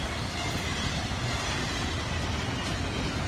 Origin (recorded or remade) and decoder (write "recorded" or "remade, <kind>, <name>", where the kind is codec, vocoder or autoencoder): recorded